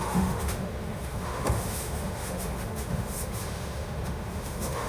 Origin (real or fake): fake